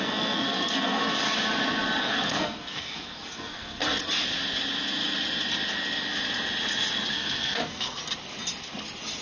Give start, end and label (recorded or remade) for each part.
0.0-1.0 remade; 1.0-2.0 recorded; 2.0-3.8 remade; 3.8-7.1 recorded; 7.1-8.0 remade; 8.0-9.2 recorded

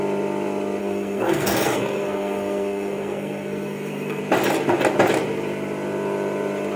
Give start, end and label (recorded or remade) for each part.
0.0-0.8 recorded; 0.8-4.2 remade; 4.2-6.8 recorded

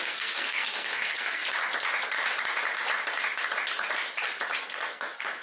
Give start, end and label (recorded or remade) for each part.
0.0-1.4 remade; 1.4-4.6 recorded; 4.6-5.4 remade

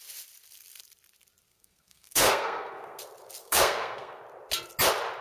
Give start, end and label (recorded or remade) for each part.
0.0-1.5 recorded; 1.5-3.0 remade; 3.0-3.4 recorded; 3.4-4.2 remade; 4.2-5.2 recorded

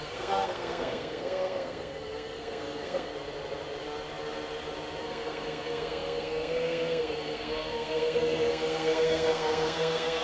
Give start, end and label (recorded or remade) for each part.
0.0-3.1 remade; 3.1-5.0 recorded; 5.0-10.2 remade

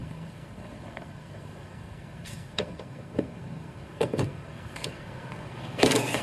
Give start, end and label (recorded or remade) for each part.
0.0-6.2 remade

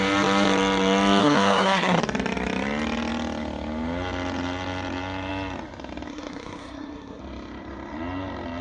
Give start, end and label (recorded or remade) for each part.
0.0-1.2 recorded; 1.2-2.0 remade; 2.0-6.1 recorded; 6.1-7.2 remade; 7.2-8.6 recorded

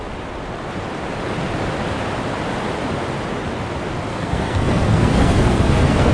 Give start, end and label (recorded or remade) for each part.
0.0-4.1 recorded; 4.1-6.1 remade